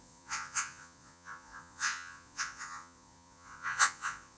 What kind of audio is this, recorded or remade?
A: remade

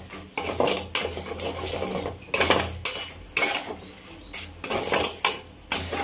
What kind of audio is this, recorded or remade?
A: recorded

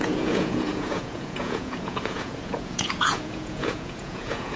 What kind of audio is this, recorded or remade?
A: remade